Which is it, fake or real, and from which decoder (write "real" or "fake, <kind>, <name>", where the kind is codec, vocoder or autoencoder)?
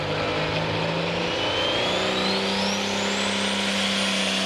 real